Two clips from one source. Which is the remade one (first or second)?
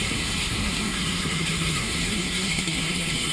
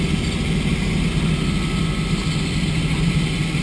first